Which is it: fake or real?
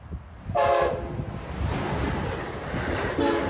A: real